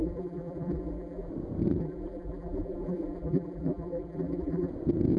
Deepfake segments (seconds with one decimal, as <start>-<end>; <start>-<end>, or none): 0.0-1.3; 1.8-4.7